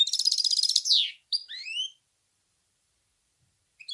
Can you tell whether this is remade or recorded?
remade